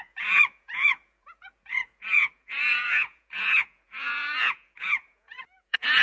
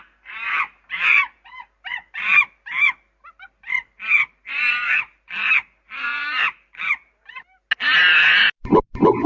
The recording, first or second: second